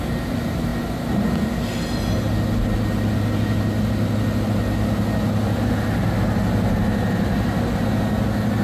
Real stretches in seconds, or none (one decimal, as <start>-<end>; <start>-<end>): 0.0-8.6